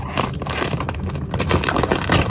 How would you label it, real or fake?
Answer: fake